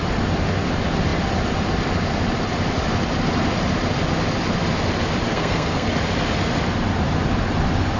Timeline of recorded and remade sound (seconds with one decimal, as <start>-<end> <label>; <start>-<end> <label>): 0.0-5.3 recorded; 5.3-5.9 remade; 5.9-8.0 recorded